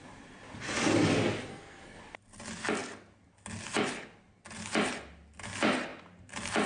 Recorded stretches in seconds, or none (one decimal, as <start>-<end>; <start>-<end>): 0.0-1.5; 2.0-6.7